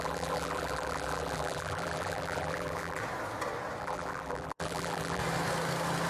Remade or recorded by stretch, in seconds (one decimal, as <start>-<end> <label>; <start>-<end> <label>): 0.0-3.0 remade; 3.0-3.8 recorded; 3.8-5.2 remade; 5.2-6.1 recorded